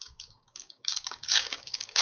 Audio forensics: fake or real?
fake